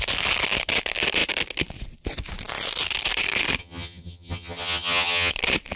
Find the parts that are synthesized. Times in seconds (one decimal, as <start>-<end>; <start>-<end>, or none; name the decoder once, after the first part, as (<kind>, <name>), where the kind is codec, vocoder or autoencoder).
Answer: 3.6-5.3 (vocoder, HiFi-GAN)